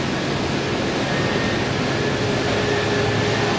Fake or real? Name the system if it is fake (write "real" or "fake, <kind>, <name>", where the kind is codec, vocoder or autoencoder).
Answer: real